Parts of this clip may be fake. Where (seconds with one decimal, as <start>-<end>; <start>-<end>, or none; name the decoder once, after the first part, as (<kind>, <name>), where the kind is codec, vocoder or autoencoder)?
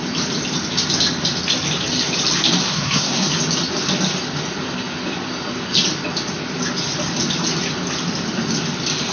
2.6-3.3 (codec, SNAC)